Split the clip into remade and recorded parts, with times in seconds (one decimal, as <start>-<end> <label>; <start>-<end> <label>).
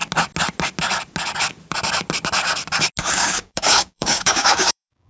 0.0-3.1 recorded; 3.1-5.1 remade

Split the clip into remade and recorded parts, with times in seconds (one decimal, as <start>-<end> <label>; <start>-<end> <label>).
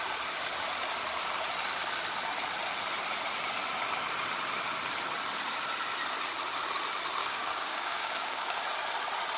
0.0-7.2 recorded; 7.2-8.6 remade; 8.6-9.4 recorded